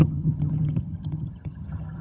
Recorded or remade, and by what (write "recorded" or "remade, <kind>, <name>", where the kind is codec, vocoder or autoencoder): remade, vocoder, HiFi-GAN